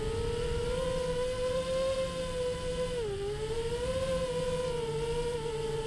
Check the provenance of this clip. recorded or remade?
recorded